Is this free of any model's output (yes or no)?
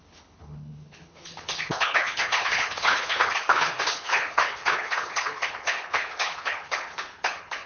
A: no